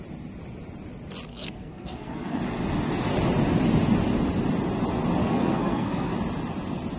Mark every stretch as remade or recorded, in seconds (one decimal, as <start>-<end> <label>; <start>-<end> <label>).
0.0-1.3 recorded; 1.3-2.4 remade; 2.4-5.2 recorded; 5.2-6.1 remade; 6.1-7.0 recorded